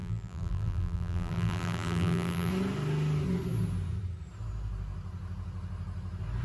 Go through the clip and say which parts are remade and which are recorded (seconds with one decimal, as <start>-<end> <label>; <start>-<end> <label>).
0.0-2.5 remade; 2.5-6.4 recorded